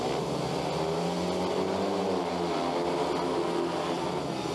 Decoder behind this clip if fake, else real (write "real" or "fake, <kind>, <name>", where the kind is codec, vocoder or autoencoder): real